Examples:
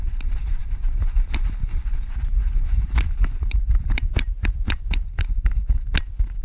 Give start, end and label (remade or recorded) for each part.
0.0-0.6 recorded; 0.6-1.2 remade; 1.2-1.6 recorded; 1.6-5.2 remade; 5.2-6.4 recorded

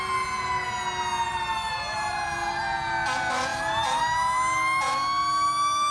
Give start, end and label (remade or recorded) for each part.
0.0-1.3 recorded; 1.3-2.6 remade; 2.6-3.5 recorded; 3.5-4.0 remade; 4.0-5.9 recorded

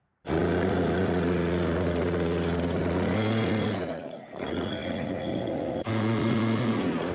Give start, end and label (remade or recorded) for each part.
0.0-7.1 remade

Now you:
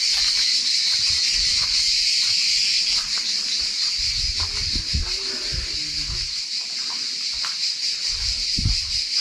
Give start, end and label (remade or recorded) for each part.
0.0-9.2 recorded

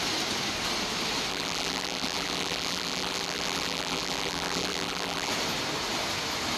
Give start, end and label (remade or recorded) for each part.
0.0-1.3 recorded; 1.3-5.3 remade; 5.3-6.6 recorded

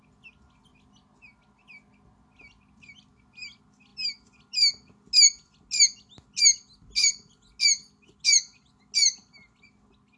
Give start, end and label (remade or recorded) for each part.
0.0-10.2 recorded